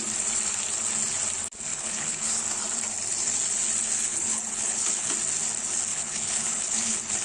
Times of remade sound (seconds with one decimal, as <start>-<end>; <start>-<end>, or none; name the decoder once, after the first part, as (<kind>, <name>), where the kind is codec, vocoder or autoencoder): 1.7-2.4 (codec, HILCodec); 4.1-5.1; 5.9-7.2